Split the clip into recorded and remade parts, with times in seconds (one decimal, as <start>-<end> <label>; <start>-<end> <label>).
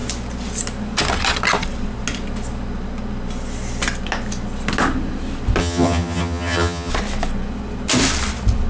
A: 0.0-5.6 recorded; 5.6-6.9 remade; 6.9-8.7 recorded